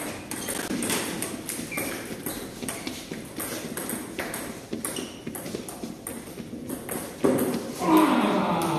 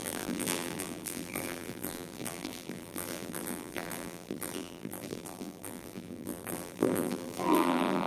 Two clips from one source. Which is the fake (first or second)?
second